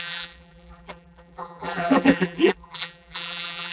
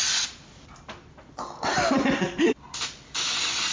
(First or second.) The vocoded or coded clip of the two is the first